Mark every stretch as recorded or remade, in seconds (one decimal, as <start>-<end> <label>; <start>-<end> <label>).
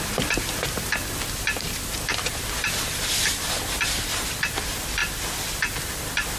0.0-6.4 remade